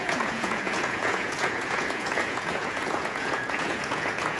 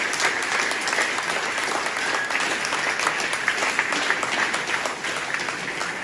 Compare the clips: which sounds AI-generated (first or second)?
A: first